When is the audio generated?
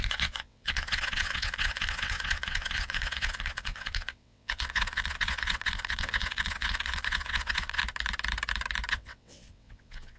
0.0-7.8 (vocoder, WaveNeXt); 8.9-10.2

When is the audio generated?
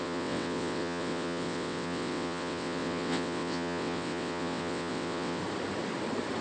0.0-5.4 (vocoder, WaveNeXt)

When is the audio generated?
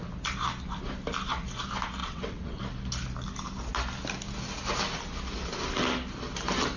2.0-2.6 (vocoder, WaveNeXt)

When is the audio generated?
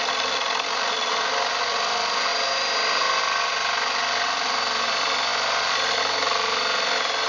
none